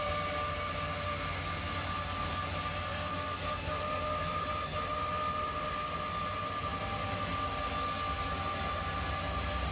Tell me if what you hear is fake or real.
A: real